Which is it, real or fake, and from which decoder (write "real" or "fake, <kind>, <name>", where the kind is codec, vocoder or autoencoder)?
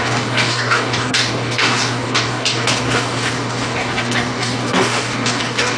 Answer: fake, codec, DAC